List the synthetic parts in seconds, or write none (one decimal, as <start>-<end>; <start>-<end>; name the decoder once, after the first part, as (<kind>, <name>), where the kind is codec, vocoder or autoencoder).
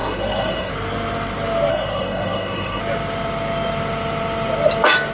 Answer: 0.0-0.7 (codec, SNAC); 1.7-2.8